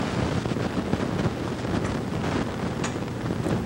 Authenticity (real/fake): real